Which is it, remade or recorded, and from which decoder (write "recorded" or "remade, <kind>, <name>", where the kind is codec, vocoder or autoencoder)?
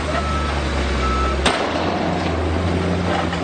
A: recorded